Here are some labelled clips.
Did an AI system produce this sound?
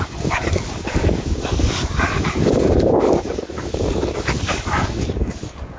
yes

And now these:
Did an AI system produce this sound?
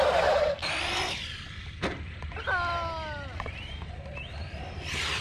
no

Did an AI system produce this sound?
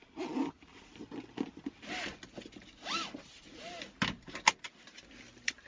no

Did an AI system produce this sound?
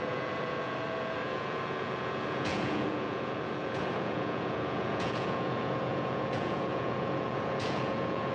yes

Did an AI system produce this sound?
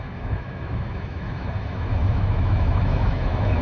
yes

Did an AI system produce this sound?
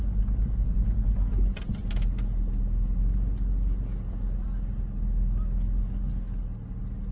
no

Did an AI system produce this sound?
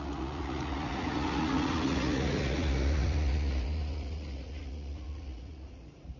yes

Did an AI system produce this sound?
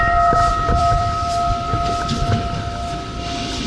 yes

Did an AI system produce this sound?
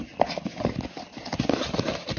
no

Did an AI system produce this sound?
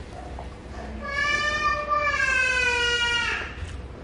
no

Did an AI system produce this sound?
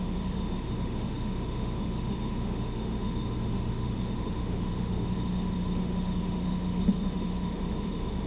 yes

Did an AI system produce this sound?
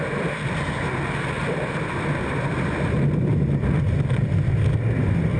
no